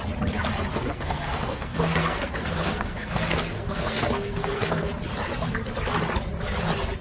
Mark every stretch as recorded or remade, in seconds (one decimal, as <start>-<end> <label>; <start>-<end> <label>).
0.0-0.7 recorded; 0.7-4.9 remade; 4.9-7.0 recorded